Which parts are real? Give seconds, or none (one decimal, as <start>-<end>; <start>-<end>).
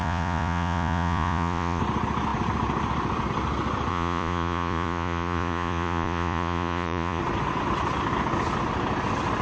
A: 1.8-3.9; 7.2-9.4